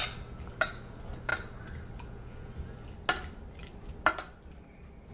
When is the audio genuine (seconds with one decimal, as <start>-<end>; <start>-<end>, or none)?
0.0-5.1